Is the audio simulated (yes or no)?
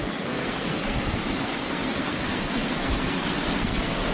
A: yes